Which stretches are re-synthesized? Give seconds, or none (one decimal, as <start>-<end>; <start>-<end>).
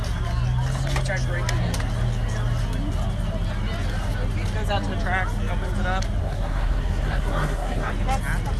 6.2-7.9